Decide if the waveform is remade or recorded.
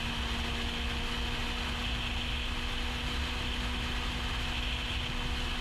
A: recorded